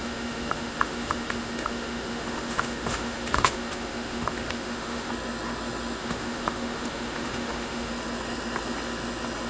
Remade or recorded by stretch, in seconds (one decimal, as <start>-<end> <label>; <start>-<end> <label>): 0.0-5.1 remade; 5.1-6.0 recorded; 6.0-7.9 remade; 7.9-9.5 recorded